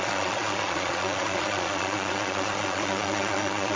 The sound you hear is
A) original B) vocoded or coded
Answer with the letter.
B